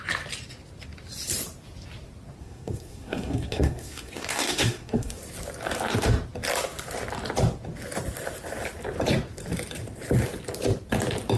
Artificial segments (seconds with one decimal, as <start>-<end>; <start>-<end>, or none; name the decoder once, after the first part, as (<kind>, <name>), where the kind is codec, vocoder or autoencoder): 2.4-5.2 (codec, SNAC)